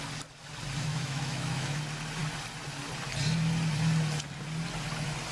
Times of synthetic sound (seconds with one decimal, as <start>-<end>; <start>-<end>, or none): 0.9-1.8